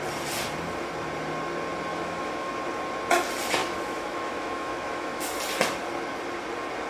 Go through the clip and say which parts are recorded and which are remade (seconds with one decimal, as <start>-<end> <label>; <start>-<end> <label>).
0.0-1.9 recorded; 1.9-2.5 remade; 2.5-3.6 recorded; 3.6-5.4 remade; 5.4-6.9 recorded